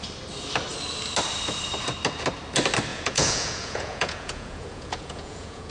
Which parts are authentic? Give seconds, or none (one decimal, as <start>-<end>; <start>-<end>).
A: 0.0-2.9